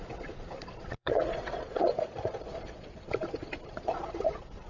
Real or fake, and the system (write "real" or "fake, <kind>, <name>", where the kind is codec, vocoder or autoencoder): fake, vocoder, Vocos